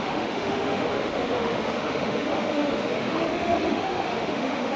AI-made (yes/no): yes